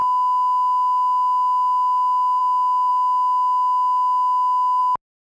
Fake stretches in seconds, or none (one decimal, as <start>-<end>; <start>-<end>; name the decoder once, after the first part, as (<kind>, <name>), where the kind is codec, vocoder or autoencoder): none